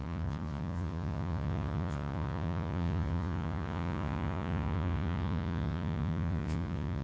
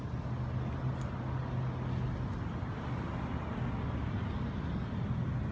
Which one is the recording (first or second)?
second